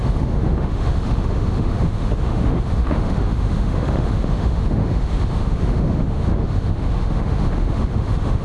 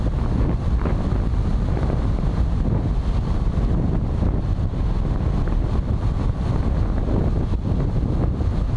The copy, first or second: first